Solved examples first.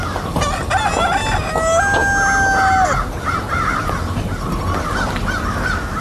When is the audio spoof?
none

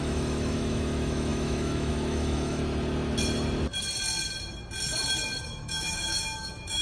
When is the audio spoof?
0.0-2.6 (autoencoder, DAC-VAE); 5.4-6.8

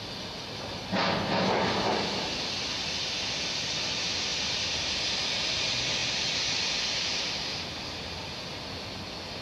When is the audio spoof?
none

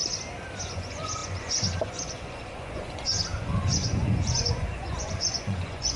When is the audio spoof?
0.6-6.0 (vocoder, Vocos)

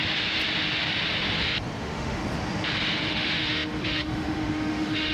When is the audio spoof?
1.8-2.2 (autoencoder, DAC-VAE); 3.1-5.1